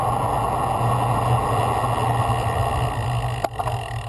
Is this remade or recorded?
recorded